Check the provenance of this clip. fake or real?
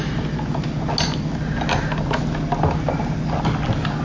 real